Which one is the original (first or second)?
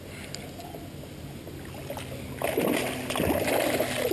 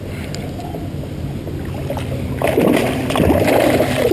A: first